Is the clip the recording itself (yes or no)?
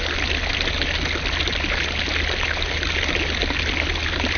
yes